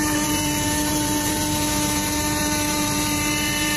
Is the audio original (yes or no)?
no